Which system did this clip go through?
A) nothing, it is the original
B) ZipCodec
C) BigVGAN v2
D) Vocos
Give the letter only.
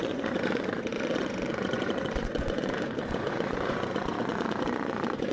D